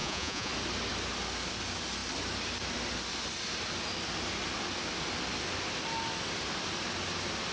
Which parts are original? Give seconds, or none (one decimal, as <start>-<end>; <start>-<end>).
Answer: 0.5-7.5